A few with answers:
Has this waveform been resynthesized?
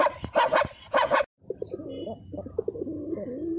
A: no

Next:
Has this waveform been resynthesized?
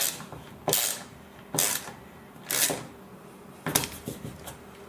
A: no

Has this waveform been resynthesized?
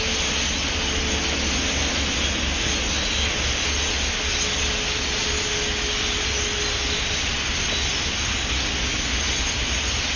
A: no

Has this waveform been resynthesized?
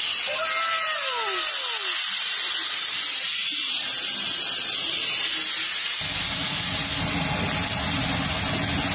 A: no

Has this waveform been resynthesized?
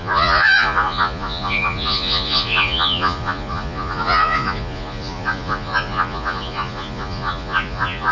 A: yes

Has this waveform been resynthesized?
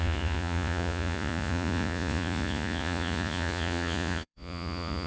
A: yes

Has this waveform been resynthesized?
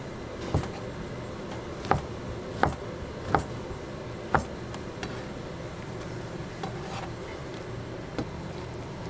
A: no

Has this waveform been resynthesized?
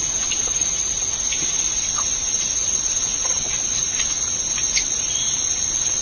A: yes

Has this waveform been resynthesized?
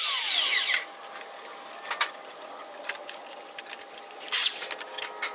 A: no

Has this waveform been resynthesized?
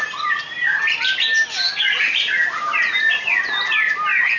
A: no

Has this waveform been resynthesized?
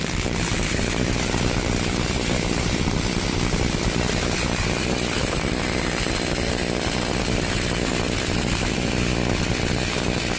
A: no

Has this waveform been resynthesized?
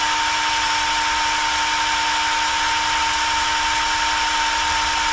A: no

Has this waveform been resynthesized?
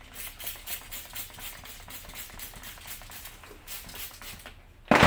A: no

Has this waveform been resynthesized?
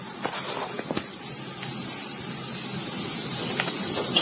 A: no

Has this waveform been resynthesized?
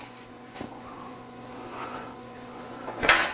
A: yes